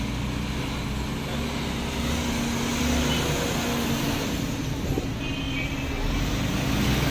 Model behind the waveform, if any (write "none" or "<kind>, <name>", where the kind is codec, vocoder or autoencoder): none